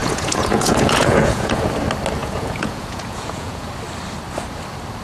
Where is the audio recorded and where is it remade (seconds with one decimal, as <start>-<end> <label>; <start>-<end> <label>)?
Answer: 0.0-1.7 remade; 1.7-2.2 recorded; 2.2-3.7 remade; 3.7-5.0 recorded